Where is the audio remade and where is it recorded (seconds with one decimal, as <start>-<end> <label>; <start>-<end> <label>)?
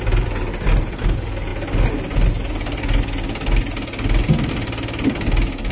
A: 0.0-5.7 recorded